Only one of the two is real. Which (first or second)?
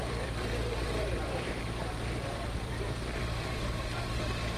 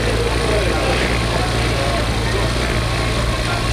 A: second